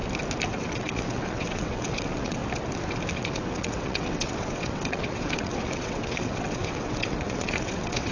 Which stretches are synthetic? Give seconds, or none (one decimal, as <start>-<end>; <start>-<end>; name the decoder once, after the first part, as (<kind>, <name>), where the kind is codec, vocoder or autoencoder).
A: 0.5-2.4 (vocoder, WaveNeXt); 3.1-8.1